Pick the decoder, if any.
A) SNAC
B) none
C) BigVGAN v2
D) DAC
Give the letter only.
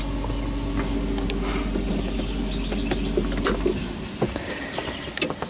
B